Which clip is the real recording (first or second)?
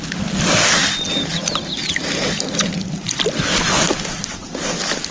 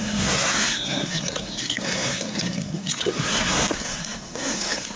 first